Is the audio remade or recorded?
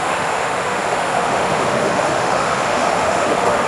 remade